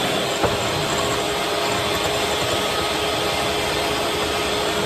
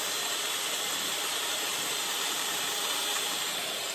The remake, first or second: second